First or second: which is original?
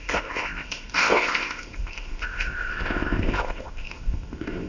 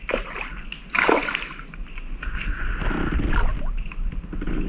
second